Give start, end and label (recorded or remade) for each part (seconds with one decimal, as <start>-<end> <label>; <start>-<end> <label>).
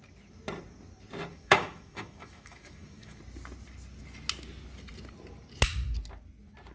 0.0-1.3 recorded; 1.3-3.2 remade; 3.2-6.7 recorded